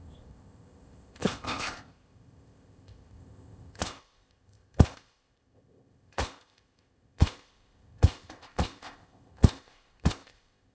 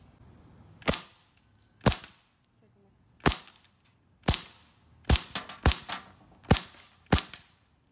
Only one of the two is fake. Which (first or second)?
first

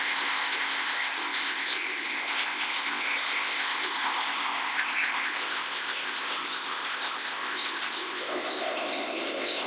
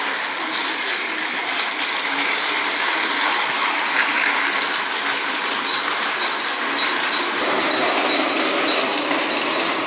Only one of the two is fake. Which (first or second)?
first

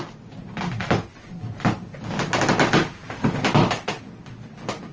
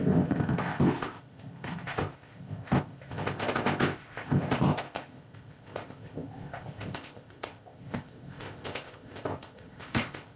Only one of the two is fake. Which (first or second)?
second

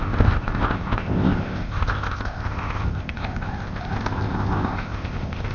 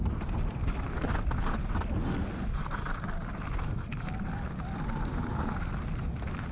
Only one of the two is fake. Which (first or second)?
first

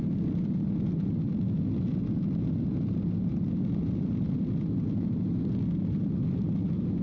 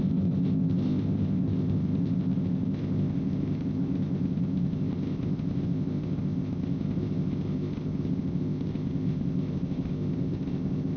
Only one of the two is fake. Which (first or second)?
second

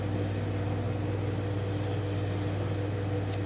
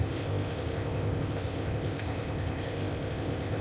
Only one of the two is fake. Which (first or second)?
second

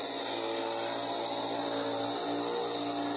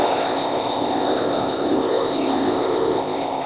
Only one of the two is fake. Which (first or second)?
second